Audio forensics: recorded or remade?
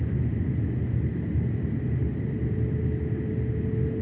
recorded